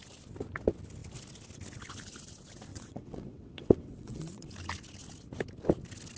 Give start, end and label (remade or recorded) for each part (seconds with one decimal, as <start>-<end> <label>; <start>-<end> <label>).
0.0-2.7 recorded; 2.7-4.5 remade; 4.5-6.2 recorded